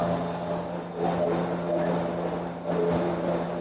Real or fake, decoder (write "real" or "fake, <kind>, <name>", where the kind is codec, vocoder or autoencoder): fake, vocoder, BigVGAN v2